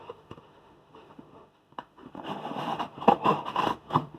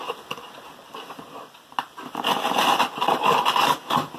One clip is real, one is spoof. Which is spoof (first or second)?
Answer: first